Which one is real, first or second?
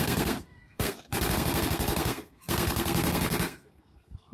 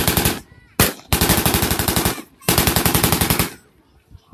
second